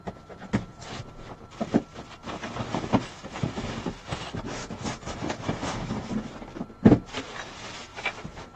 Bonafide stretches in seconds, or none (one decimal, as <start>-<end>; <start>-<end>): 0.0-4.6; 6.1-8.6